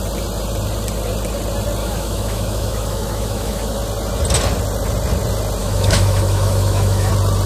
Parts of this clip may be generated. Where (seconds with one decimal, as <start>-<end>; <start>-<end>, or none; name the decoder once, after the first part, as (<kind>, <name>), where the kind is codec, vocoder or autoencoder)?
1.8-3.8 (autoencoder, DAC-VAE); 5.6-7.1